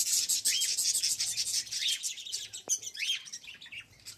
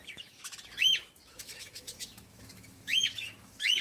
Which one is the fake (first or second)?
second